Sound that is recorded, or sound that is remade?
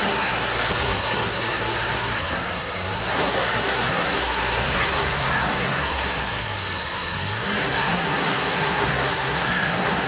remade